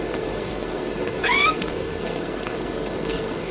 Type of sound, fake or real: fake